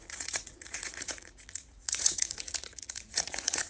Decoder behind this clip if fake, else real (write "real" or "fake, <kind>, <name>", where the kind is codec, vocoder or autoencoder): fake, vocoder, Vocos